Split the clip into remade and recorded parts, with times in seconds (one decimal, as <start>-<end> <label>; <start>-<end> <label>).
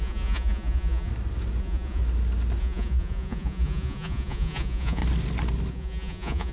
0.0-1.1 remade; 1.1-1.6 recorded; 1.6-2.0 remade; 2.0-2.6 recorded; 2.6-5.0 remade; 5.0-5.7 recorded; 5.7-6.5 remade